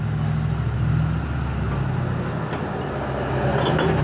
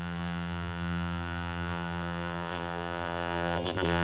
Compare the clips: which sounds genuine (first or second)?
first